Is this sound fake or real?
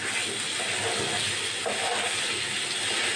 real